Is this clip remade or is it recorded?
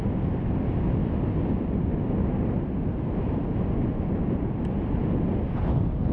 recorded